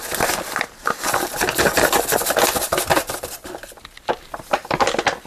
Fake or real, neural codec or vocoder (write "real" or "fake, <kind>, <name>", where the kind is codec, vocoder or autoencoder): real